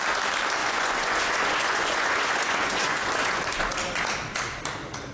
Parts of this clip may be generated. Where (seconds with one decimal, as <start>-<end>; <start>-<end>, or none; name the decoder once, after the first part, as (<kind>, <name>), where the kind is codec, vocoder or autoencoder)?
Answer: 0.6-3.7 (vocoder, Vocos)